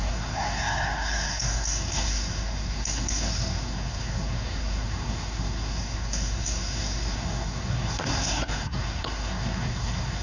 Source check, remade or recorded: remade